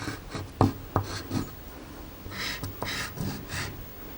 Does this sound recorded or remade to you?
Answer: recorded